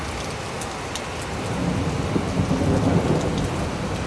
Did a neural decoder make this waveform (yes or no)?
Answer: no